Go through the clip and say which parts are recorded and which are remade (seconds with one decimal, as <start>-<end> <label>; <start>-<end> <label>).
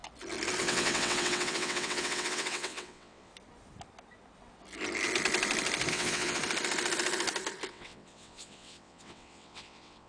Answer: 0.0-0.6 recorded; 0.6-3.3 remade; 3.3-5.9 recorded; 5.9-6.4 remade; 6.4-7.7 recorded; 7.7-10.1 remade